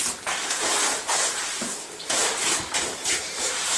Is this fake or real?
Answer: fake